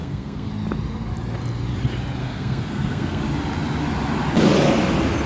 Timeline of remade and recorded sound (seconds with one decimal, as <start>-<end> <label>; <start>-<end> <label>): 0.0-0.5 remade; 0.5-2.2 recorded; 2.2-3.2 remade; 3.2-5.3 recorded